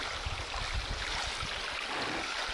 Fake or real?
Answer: real